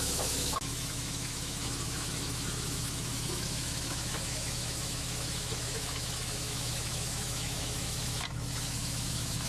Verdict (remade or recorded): remade